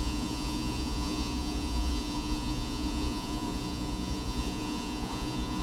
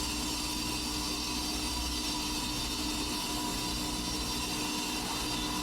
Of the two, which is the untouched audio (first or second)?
second